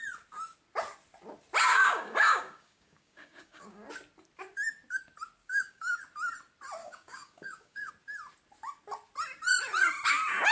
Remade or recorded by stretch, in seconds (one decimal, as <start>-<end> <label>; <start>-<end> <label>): 0.0-1.7 recorded; 1.7-3.9 remade; 3.9-5.4 recorded; 5.4-5.9 remade; 5.9-6.8 recorded; 6.8-7.9 remade; 7.9-10.5 recorded